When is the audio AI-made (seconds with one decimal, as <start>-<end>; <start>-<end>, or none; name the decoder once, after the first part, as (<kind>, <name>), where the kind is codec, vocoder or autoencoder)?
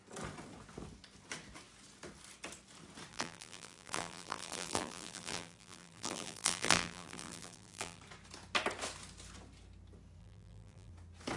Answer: 3.1-8.0 (vocoder, BigVGAN v2); 10.2-10.9